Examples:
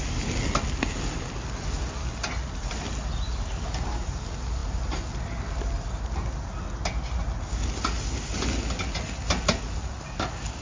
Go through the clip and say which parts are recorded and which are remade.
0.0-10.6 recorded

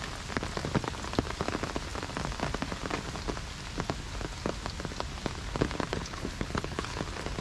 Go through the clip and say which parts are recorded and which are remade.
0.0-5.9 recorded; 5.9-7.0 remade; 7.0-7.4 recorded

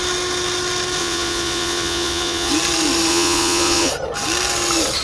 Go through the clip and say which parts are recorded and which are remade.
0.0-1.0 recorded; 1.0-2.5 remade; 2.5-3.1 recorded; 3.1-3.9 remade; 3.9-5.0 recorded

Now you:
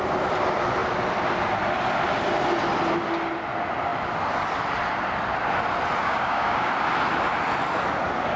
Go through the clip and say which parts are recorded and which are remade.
0.0-6.0 recorded; 6.0-6.7 remade; 6.7-8.4 recorded

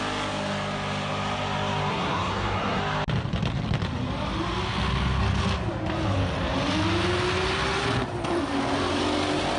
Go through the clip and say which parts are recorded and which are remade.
0.0-1.9 recorded; 1.9-2.8 remade; 2.8-9.6 recorded

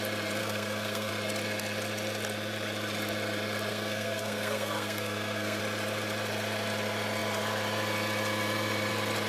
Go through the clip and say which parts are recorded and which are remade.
0.0-0.4 recorded; 0.4-1.1 remade; 1.1-3.7 recorded; 3.7-5.6 remade; 5.6-9.3 recorded